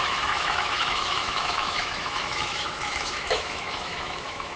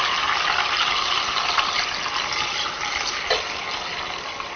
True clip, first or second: second